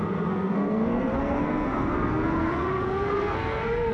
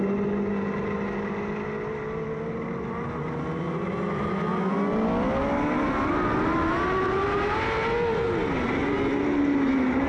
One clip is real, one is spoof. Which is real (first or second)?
second